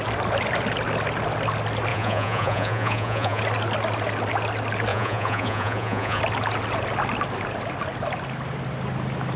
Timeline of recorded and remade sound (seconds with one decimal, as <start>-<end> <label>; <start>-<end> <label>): 0.0-1.9 recorded; 1.9-3.4 remade; 3.4-4.9 recorded; 4.9-6.2 remade; 6.2-9.4 recorded